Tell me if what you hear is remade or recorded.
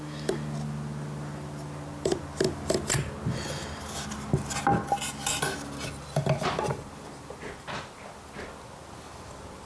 recorded